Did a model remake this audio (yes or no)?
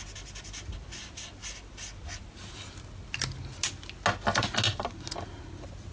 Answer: no